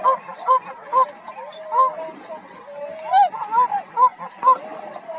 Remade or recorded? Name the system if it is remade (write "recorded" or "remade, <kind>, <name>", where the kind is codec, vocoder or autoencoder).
recorded